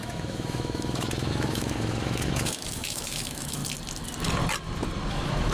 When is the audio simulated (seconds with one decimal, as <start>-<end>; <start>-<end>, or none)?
0.0-3.6; 5.1-5.5